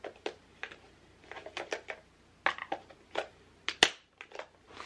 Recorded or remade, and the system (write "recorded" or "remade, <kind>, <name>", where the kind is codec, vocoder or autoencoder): recorded